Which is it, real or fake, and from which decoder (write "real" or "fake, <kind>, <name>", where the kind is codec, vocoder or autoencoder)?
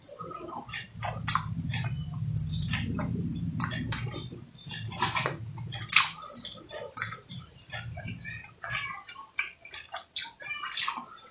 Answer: fake, vocoder, BigVGAN v2